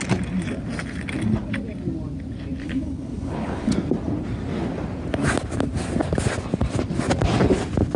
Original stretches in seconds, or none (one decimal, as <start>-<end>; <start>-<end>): 0.0-2.6; 3.7-8.0